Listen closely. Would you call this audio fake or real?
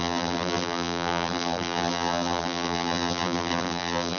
fake